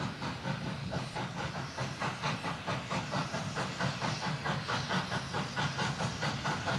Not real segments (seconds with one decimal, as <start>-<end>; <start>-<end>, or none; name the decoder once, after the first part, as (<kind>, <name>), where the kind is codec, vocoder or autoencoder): 0.8-1.5 (codec, HILCodec)